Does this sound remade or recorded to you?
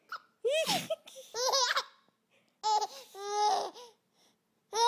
recorded